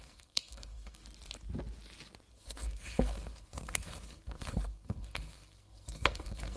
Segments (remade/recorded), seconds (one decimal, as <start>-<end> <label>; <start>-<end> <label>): 0.0-1.0 remade; 1.0-2.3 recorded; 2.3-6.6 remade